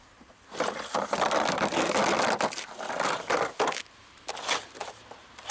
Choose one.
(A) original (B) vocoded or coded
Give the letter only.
A